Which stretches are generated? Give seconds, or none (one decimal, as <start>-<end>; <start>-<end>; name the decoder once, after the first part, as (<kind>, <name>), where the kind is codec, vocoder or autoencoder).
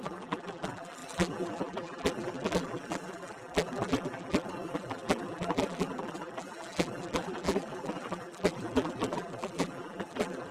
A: 0.0-10.5 (vocoder, BigVGAN v2)